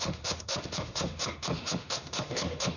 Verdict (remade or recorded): remade